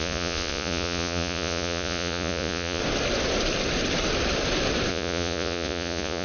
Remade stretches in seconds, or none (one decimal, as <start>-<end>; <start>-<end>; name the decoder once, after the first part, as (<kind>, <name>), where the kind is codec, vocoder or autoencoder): 0.0-2.8 (vocoder, Vocos); 4.9-6.2